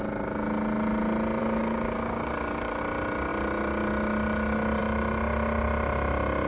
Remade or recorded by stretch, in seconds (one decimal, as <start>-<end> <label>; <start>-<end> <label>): 0.0-1.4 recorded; 1.4-2.8 remade; 2.8-6.5 recorded